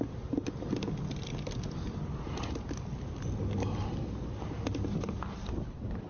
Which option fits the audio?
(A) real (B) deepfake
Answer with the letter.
A